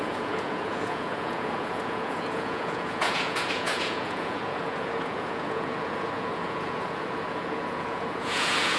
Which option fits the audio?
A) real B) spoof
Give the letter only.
B